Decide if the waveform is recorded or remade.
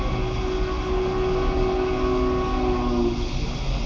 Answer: recorded